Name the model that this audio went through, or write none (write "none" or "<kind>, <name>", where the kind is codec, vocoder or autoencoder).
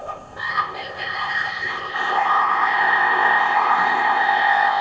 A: codec, ZipCodec